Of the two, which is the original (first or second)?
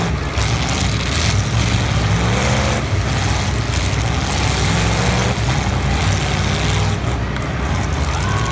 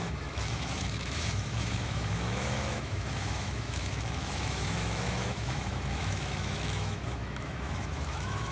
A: first